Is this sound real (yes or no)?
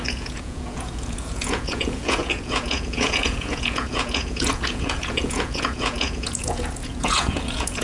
no